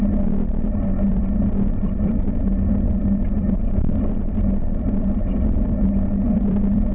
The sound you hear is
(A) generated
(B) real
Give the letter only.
A